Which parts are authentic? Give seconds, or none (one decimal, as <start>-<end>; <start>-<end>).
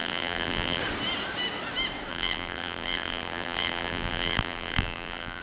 0.8-2.1